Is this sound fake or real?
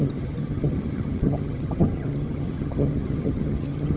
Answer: fake